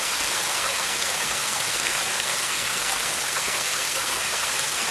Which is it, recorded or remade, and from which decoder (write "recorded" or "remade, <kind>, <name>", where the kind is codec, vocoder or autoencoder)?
remade, codec, SNAC